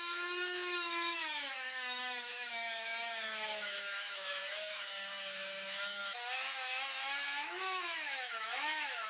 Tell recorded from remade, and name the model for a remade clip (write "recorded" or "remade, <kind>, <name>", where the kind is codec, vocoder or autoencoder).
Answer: remade, autoencoder, DAC-VAE